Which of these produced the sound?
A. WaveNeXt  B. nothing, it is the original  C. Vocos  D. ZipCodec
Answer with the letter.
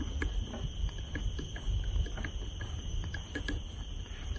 B